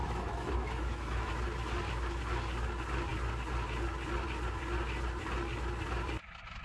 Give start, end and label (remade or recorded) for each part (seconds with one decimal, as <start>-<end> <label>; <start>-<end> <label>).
0.0-1.3 remade; 1.3-6.6 recorded